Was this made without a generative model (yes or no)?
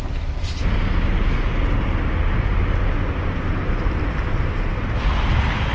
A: yes